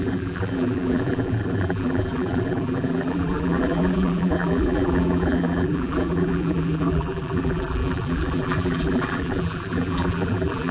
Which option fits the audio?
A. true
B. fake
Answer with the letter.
B